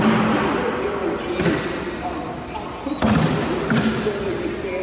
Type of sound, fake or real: real